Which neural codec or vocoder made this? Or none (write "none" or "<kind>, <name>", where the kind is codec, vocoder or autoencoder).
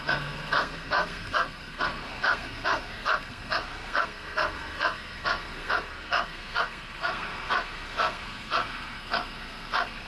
codec, SNAC